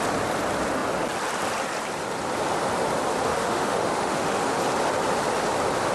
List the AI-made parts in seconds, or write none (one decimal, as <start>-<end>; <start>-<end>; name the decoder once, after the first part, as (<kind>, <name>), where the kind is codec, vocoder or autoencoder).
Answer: 3.3-4.6 (autoencoder, DAC-VAE)